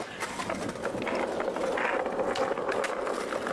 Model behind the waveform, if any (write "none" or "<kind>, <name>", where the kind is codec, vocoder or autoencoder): none